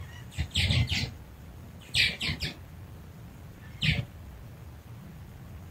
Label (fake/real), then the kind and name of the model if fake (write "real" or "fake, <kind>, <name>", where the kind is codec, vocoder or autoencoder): real